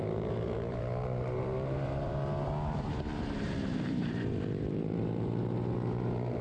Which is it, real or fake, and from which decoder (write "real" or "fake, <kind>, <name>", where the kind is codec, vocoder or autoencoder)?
fake, vocoder, BigVGAN v2